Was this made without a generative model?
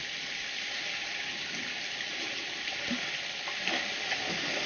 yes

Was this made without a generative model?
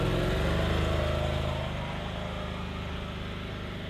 yes